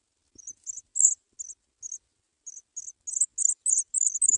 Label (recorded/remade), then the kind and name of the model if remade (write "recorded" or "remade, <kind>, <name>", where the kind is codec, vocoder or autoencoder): recorded